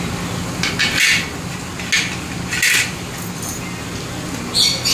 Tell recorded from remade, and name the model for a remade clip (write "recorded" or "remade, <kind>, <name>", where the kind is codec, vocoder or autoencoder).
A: recorded